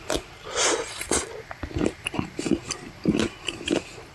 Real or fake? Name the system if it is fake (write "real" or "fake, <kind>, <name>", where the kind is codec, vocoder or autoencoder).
real